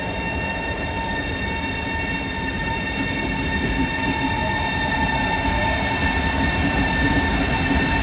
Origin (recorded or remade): recorded